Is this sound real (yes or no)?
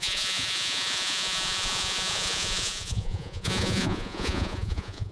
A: no